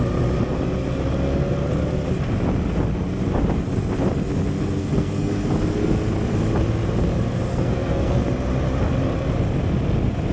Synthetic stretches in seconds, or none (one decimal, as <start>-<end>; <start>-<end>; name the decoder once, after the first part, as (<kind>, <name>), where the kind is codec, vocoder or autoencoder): 4.8-5.5 (codec, SNAC); 7.5-8.1